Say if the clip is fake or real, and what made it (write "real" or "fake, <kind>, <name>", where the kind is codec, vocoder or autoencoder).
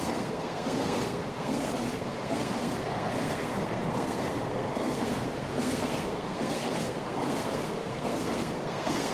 fake, codec, SNAC